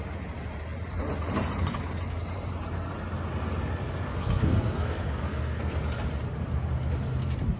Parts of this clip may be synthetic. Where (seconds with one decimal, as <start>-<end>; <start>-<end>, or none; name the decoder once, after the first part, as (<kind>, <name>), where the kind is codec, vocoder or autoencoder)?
4.1-5.7 (codec, SNAC)